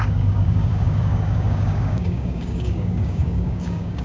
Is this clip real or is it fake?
fake